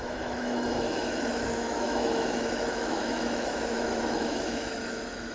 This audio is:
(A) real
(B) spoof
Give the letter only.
B